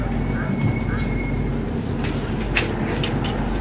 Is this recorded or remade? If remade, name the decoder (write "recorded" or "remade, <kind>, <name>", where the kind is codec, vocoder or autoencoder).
recorded